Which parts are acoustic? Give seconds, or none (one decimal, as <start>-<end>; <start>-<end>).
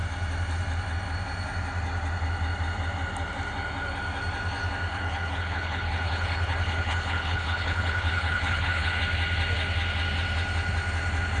0.0-4.9; 9.0-11.4